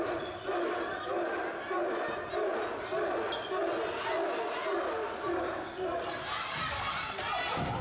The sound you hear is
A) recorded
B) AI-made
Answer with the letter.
A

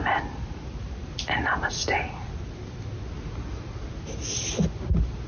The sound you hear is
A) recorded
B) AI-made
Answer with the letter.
A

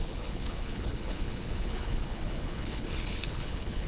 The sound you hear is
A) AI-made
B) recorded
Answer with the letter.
A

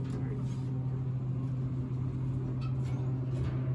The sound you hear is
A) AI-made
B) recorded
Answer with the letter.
B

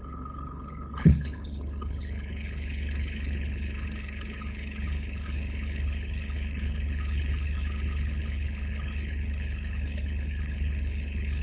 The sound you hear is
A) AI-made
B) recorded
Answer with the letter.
A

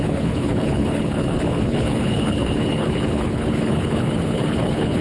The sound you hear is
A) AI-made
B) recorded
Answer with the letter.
A